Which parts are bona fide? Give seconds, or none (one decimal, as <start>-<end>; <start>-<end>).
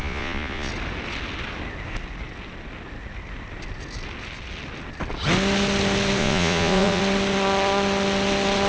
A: 0.7-6.2; 7.0-8.7